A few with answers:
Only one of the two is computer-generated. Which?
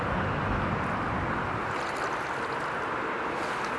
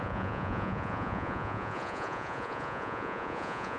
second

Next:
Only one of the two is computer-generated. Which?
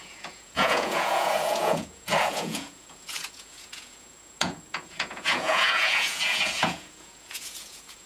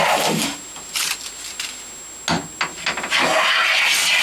first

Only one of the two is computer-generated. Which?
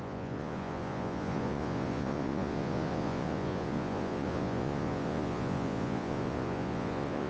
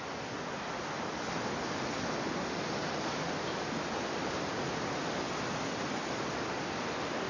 first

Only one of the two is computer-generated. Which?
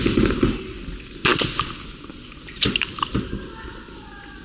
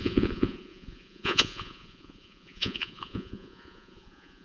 second